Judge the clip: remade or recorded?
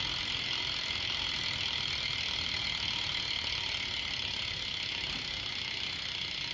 recorded